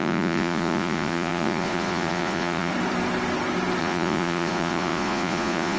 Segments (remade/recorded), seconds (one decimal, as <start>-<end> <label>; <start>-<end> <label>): 0.0-2.7 remade; 2.7-3.8 recorded; 3.8-5.8 remade